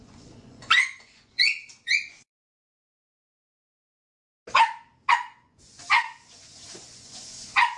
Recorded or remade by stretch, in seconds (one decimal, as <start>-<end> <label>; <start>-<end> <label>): 0.0-2.3 remade; 2.3-5.1 recorded; 5.1-7.8 remade